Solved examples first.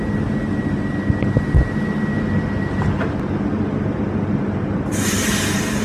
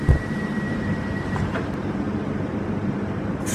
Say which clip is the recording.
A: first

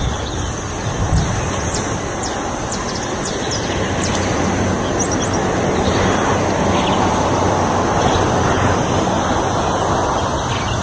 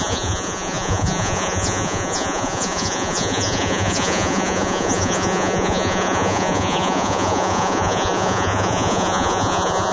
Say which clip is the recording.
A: first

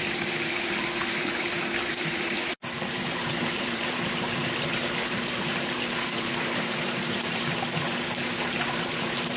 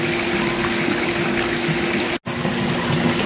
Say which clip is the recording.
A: second